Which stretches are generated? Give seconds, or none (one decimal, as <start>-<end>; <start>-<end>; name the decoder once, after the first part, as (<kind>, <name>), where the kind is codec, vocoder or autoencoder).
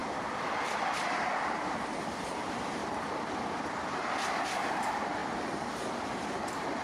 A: 1.0-2.8 (vocoder, BigVGAN v2); 4.4-5.2